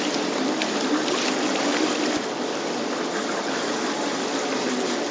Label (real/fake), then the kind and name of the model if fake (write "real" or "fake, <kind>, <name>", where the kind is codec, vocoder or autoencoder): real